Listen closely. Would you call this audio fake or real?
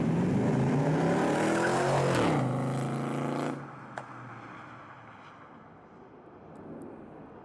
real